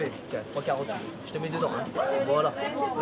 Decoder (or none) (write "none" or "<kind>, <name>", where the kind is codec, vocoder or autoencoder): none